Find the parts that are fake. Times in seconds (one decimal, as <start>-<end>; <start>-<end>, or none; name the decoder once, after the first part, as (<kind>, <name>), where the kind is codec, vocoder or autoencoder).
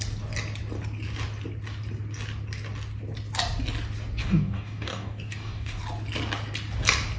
4.2-5.8 (codec, DAC)